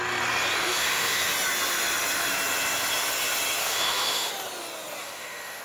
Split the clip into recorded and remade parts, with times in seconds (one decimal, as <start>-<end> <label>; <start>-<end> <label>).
0.0-0.6 recorded; 0.6-1.3 remade; 1.3-3.6 recorded; 3.6-4.3 remade; 4.3-5.0 recorded; 5.0-5.6 remade